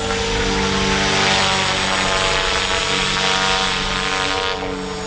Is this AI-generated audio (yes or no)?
no